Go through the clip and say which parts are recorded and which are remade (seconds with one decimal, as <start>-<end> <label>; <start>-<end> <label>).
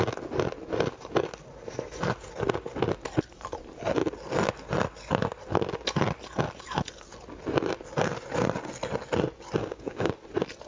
0.0-9.6 recorded; 9.6-10.1 remade; 10.1-10.7 recorded